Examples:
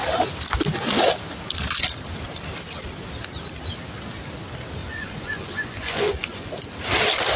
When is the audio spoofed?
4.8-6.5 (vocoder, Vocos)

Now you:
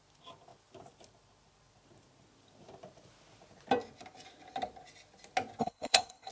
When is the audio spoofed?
5.6-6.3 (codec, HILCodec)

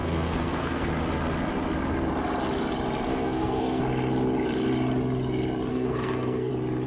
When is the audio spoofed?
0.0-0.9 (codec, SNAC); 3.1-3.8; 5.7-6.5

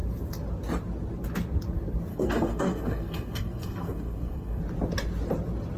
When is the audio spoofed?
2.1-4.6 (codec, SNAC)